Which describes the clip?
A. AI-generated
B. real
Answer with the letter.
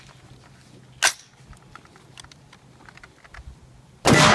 B